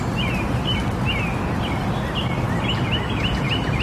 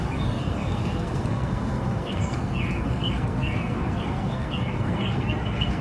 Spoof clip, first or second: second